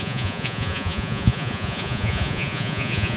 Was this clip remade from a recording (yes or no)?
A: yes